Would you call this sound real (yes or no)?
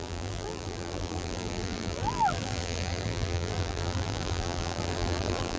no